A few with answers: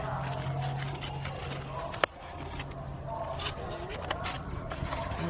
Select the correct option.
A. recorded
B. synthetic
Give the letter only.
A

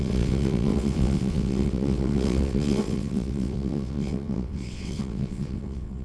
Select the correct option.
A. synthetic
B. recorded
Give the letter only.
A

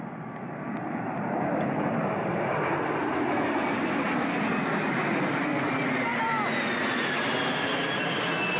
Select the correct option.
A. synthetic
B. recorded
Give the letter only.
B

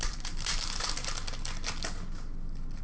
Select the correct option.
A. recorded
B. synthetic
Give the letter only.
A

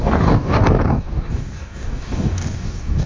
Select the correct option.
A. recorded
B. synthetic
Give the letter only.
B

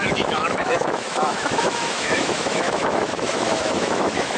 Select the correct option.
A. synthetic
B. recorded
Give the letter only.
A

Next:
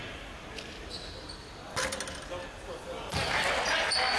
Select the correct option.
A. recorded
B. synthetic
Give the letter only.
A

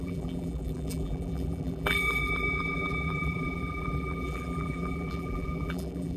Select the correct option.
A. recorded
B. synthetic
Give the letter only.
B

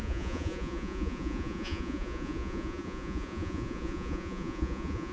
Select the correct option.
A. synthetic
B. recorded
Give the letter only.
A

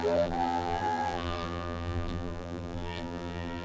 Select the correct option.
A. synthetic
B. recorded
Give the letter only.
A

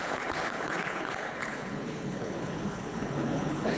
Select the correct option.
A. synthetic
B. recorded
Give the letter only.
A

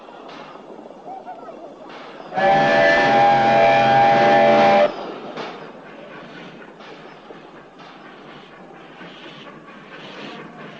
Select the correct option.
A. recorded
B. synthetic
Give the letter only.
A